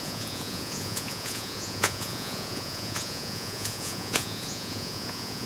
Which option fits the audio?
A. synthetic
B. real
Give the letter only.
A